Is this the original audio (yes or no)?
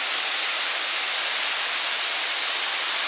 yes